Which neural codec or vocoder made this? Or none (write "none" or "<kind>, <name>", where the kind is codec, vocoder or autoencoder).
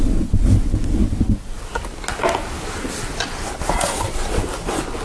none